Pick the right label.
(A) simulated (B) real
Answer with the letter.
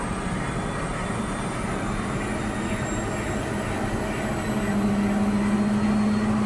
B